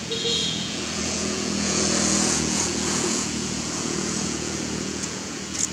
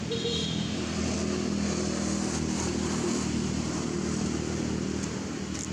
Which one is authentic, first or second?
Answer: second